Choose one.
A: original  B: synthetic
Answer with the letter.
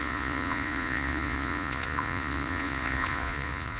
B